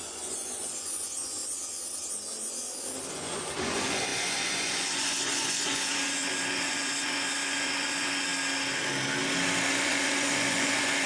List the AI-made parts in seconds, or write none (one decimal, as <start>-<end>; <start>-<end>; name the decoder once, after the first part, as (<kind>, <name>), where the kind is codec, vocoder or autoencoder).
0.0-1.4 (vocoder, Vocos); 3.1-8.3; 9.7-11.1